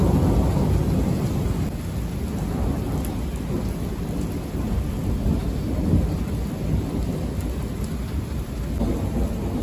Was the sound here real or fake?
real